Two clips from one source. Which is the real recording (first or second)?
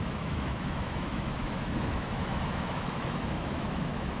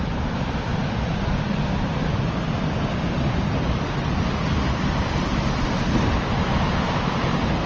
second